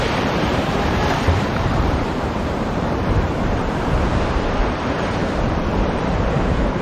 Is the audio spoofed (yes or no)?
yes